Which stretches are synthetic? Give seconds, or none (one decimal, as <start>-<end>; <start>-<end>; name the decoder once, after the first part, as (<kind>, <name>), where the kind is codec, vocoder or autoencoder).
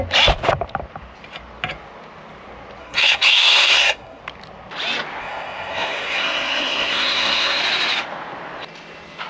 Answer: 2.8-4.2 (codec, SNAC); 5.2-7.6